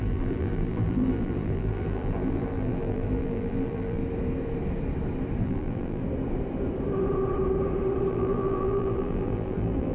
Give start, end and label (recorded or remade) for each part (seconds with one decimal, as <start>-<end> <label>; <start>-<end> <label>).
0.0-4.0 remade; 4.0-5.4 recorded; 5.4-6.0 remade; 6.0-8.1 recorded; 8.1-9.9 remade